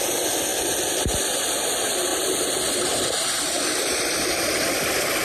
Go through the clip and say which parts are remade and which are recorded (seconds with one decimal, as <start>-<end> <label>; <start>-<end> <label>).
0.0-2.1 recorded; 2.1-5.2 remade